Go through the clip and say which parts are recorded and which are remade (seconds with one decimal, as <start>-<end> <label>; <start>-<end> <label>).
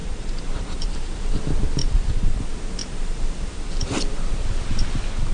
0.0-1.3 remade; 1.3-1.8 recorded; 1.8-2.4 remade; 2.4-2.8 recorded; 2.8-4.3 remade; 4.3-5.3 recorded